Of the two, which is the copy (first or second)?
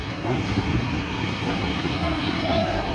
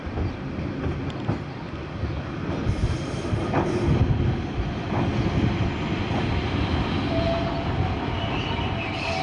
first